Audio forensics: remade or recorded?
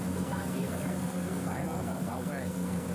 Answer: remade